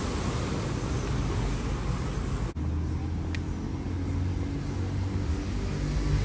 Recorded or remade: recorded